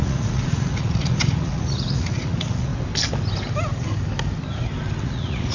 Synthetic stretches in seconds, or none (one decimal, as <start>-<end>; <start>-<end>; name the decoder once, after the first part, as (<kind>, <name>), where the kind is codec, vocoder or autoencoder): 0.0-2.7 (vocoder, Vocos); 5.0-5.5

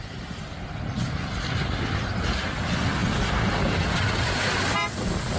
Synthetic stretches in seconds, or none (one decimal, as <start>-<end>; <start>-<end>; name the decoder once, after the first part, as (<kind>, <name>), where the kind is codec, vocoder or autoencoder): none

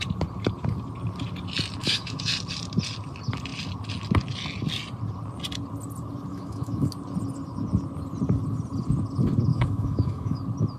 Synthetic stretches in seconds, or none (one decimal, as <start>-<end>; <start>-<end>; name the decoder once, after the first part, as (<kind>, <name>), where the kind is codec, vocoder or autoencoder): 1.8-2.3 (autoencoder, DAC-VAE); 6.3-6.9; 9.5-10.4